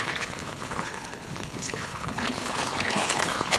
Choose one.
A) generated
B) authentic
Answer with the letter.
A